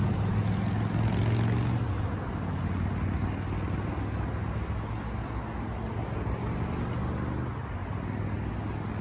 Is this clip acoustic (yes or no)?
yes